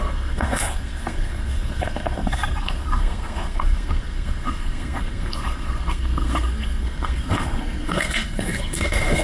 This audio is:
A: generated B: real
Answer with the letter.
A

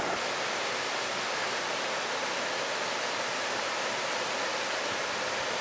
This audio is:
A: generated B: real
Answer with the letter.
B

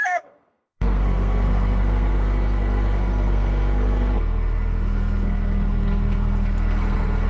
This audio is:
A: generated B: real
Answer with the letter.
A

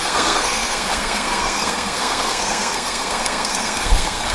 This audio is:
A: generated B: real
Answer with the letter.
A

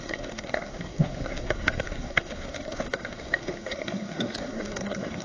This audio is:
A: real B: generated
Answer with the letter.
B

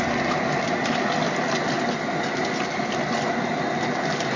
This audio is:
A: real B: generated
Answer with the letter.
A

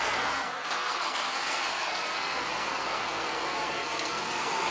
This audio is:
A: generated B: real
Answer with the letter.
A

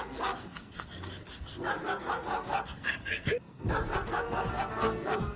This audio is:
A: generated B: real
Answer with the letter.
A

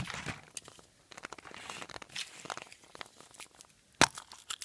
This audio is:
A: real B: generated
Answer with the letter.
A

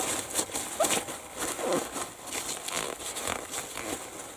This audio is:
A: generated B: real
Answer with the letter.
B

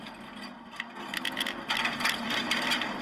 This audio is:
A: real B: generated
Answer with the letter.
A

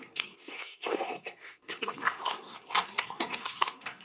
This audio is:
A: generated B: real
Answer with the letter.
A